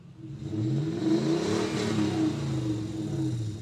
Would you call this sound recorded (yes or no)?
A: yes